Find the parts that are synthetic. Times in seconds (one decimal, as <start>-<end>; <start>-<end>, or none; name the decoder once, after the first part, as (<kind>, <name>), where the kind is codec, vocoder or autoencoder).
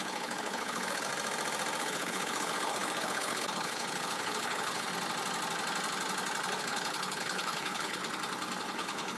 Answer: 0.0-1.1 (codec, HILCodec); 1.8-4.9; 6.6-8.0; 8.6-9.2